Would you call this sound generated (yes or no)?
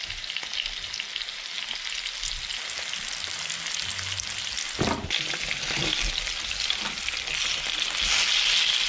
no